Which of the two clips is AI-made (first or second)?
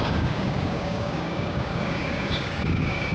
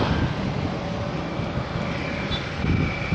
first